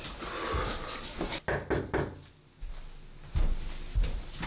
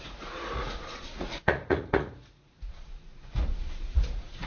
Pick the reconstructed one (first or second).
second